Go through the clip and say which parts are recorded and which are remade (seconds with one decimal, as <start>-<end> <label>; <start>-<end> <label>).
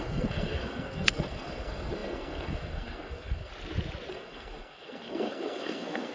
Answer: 0.0-3.5 remade; 3.5-4.1 recorded; 4.1-6.1 remade